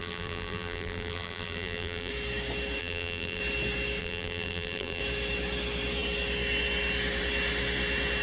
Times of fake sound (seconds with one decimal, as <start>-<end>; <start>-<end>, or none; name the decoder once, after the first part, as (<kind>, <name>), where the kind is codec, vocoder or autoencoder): 0.0-2.1 (vocoder, BigVGAN v2); 2.8-3.4; 4.0-5.0